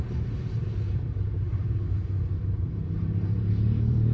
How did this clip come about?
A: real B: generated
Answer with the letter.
B